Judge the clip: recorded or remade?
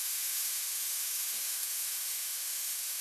remade